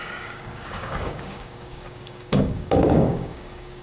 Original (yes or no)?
no